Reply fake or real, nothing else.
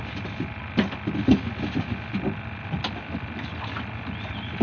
real